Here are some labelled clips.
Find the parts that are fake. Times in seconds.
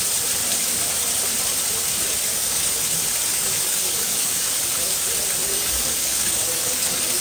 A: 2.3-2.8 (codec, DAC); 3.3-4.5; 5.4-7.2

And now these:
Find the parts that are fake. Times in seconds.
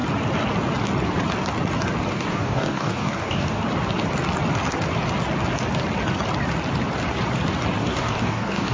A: 2.1-3.6 (codec, DAC); 7.8-8.7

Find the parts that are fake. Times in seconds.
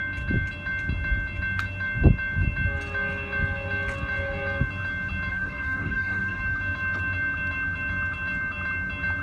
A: 5.3-6.4 (codec, DAC)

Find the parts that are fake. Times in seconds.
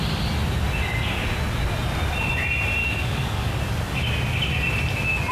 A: 2.8-3.6 (codec, DAC)